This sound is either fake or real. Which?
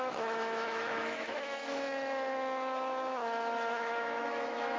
fake